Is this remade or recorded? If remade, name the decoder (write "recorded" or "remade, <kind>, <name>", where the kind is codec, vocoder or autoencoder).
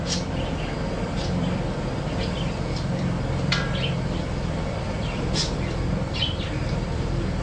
remade, vocoder, BigVGAN v2